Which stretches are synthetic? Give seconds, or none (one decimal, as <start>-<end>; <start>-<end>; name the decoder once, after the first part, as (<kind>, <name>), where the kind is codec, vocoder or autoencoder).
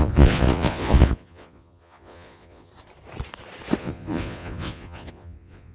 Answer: 0.0-2.7 (vocoder, Vocos); 3.8-5.7